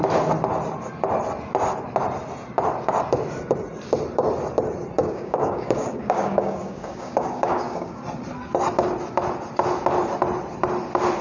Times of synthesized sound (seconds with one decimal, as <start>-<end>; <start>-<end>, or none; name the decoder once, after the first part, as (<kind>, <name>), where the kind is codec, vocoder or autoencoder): 5.0-8.0 (codec, DAC)